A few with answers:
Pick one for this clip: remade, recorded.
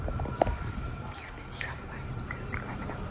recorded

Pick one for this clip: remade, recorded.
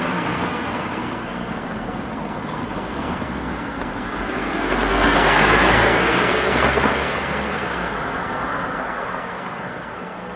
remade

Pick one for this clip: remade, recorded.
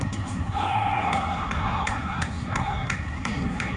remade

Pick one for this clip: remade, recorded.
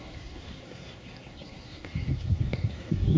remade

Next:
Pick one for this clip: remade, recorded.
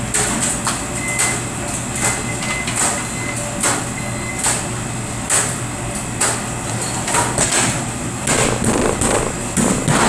recorded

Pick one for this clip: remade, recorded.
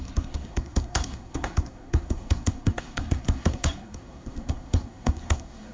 remade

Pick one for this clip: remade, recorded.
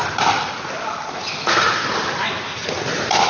recorded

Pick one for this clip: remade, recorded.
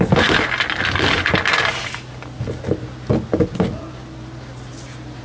recorded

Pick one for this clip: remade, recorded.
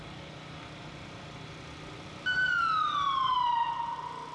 recorded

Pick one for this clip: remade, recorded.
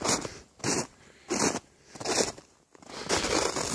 recorded